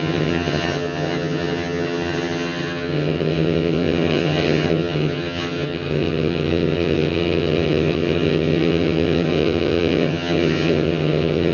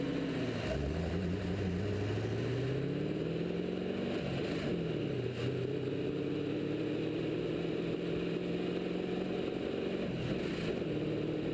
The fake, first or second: first